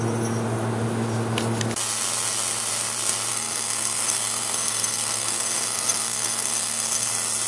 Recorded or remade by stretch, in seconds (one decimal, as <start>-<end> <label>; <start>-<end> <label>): 0.0-3.3 recorded; 3.3-7.1 remade; 7.1-7.5 recorded